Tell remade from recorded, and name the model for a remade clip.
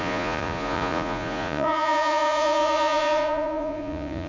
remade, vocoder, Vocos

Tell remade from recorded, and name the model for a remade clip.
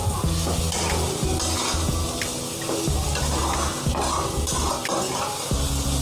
recorded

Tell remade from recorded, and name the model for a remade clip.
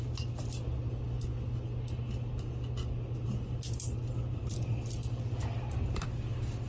recorded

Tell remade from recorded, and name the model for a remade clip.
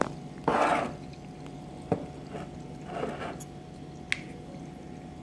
recorded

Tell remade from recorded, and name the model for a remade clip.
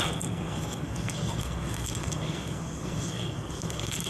remade, codec, SNAC